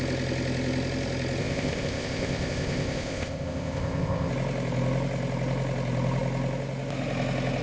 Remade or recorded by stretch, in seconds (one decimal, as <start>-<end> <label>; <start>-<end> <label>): 0.0-1.4 recorded; 1.4-4.3 remade; 4.3-7.6 recorded